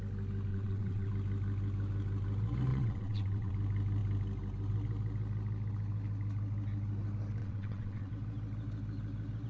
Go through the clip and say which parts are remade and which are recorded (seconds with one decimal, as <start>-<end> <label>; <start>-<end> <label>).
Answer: 0.0-0.5 recorded; 0.5-1.1 remade; 1.1-2.7 recorded; 2.7-3.5 remade; 3.5-7.4 recorded; 7.4-8.1 remade; 8.1-9.5 recorded